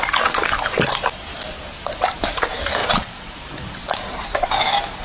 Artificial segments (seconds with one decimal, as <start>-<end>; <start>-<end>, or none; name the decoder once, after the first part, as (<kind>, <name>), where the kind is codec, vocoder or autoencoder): 2.8-3.3 (vocoder, Vocos); 3.8-4.5